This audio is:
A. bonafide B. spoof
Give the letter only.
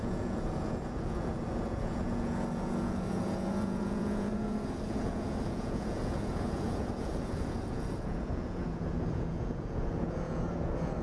B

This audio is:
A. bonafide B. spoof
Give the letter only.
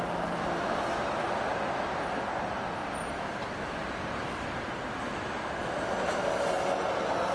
A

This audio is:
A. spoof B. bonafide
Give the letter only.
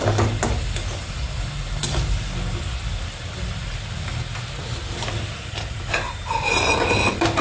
B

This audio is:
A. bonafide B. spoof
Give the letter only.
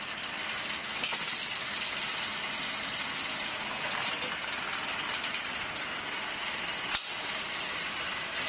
A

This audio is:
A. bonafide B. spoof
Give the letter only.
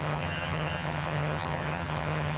B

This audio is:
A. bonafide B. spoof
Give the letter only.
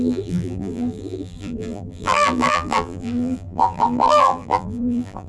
B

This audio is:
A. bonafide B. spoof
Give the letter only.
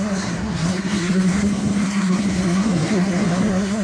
B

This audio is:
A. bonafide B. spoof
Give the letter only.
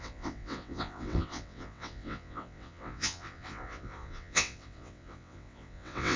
B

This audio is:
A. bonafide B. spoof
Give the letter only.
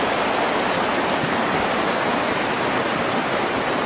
A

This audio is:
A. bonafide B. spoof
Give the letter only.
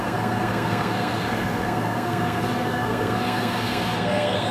B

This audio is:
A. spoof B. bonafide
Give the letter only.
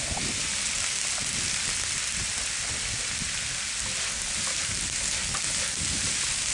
B